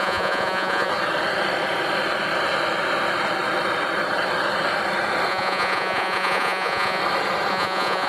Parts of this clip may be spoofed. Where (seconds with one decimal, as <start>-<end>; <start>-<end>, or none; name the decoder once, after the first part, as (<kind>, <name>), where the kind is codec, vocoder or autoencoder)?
0.0-0.9 (vocoder, Vocos); 5.3-7.0; 7.5-8.1